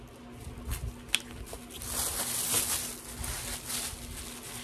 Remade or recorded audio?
recorded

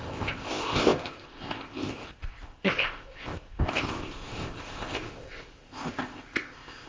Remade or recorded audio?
remade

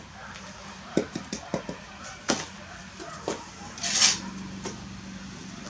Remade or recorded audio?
recorded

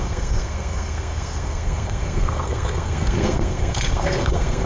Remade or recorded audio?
remade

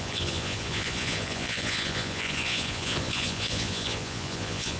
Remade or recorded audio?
remade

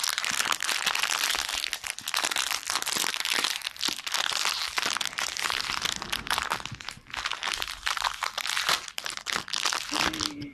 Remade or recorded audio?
recorded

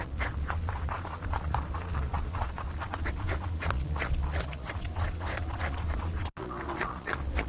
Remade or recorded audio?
remade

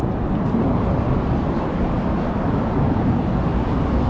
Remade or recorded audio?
recorded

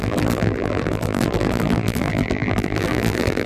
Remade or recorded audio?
remade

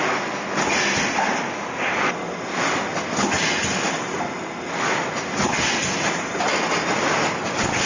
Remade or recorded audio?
recorded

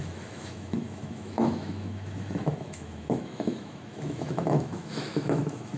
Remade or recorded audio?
remade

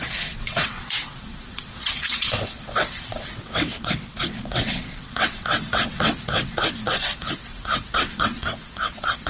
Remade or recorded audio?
remade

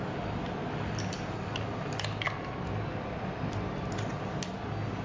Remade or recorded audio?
recorded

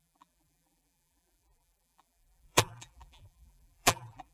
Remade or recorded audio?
remade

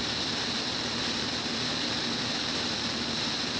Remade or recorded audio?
recorded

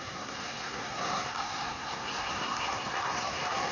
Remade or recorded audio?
remade